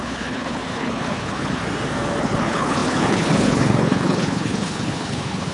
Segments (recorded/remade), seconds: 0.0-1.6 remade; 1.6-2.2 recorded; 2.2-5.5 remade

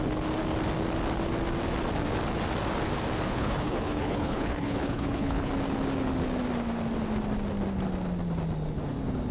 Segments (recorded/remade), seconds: 0.0-3.3 recorded; 3.3-5.5 remade; 5.5-9.3 recorded